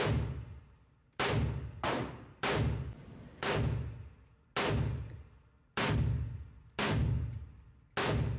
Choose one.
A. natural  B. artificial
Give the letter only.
A